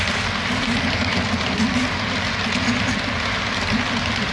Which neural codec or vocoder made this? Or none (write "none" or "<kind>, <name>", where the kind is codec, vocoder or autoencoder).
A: none